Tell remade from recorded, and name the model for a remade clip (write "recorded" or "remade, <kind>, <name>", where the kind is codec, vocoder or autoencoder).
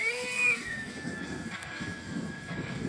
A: remade, codec, SNAC